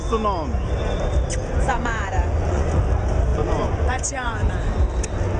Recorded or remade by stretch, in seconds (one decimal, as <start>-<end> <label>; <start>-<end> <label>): 0.0-1.7 recorded; 1.7-2.8 remade; 2.8-3.3 recorded; 3.3-4.5 remade; 4.5-5.4 recorded